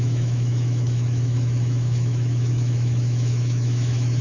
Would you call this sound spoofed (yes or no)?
yes